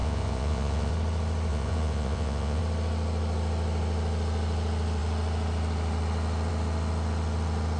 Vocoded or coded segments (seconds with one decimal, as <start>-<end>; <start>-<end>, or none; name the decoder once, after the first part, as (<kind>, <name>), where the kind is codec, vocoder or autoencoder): 0.0-0.9 (vocoder, Vocos); 1.5-2.6